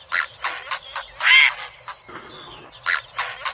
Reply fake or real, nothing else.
real